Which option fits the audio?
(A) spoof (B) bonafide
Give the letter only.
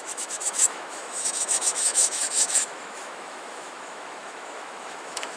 A